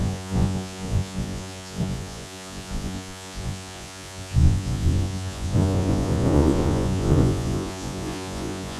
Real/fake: fake